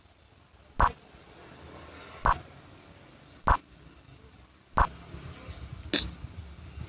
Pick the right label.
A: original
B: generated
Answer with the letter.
A